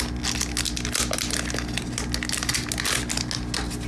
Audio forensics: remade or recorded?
recorded